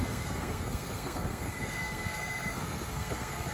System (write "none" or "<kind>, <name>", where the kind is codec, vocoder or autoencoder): codec, SNAC